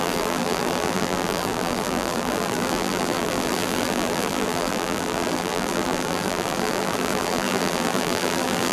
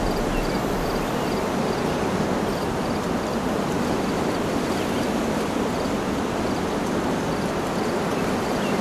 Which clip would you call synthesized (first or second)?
first